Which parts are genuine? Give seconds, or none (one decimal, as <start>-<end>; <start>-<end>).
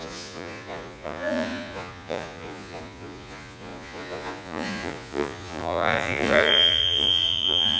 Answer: none